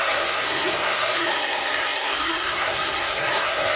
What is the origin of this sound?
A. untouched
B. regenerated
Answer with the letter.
B